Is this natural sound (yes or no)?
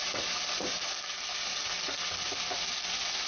yes